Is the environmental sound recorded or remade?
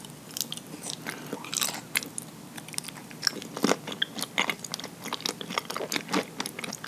recorded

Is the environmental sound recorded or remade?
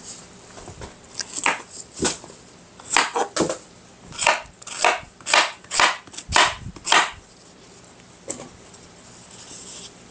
recorded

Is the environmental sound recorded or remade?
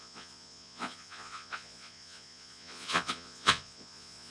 remade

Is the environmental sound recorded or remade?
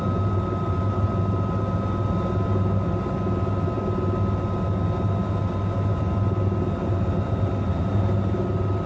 recorded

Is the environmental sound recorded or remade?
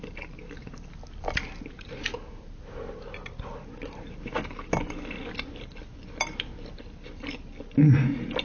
recorded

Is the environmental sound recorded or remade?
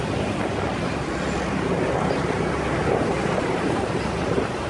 recorded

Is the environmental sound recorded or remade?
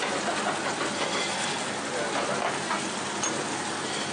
recorded